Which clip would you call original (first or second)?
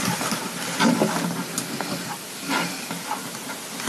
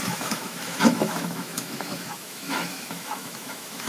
first